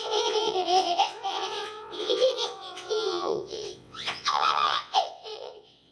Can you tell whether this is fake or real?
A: fake